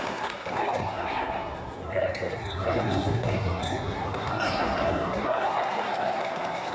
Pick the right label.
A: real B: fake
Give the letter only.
B